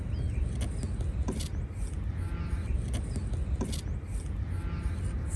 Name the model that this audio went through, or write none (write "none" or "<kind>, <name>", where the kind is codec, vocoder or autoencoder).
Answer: none